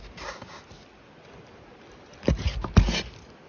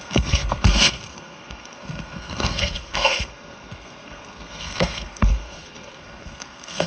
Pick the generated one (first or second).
second